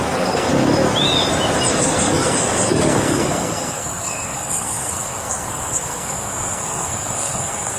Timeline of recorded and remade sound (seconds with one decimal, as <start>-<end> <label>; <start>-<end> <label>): 0.0-0.5 remade; 0.5-1.7 recorded; 1.7-7.8 remade